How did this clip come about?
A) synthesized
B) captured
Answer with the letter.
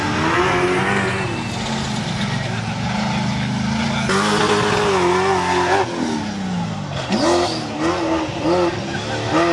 B